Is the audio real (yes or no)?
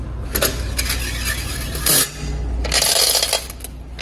yes